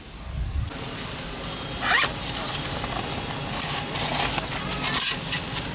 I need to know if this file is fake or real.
real